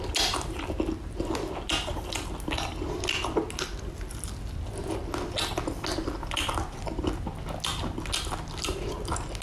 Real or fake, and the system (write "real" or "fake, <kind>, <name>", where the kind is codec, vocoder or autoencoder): real